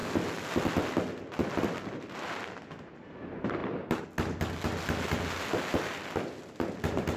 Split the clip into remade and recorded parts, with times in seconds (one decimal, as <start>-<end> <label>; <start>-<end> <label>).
0.0-7.2 recorded